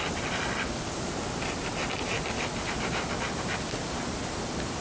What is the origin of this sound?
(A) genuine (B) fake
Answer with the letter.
A